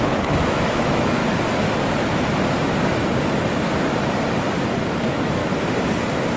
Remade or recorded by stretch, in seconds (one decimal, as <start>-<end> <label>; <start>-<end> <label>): 0.0-1.2 remade; 1.2-5.0 recorded; 5.0-5.4 remade; 5.4-6.4 recorded